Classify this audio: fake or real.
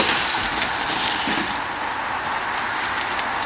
real